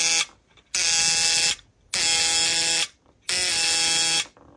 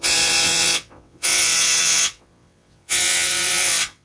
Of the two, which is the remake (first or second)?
second